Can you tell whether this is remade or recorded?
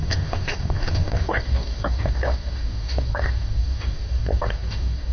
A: remade